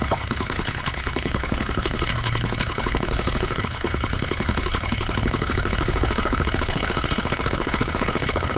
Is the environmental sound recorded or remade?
remade